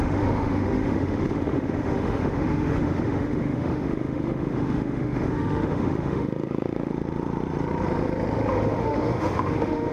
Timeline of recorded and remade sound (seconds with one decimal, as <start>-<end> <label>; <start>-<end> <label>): 0.0-6.9 remade; 6.9-8.5 recorded; 8.5-9.9 remade